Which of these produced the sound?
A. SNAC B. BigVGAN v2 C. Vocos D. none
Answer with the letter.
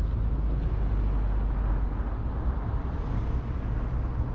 D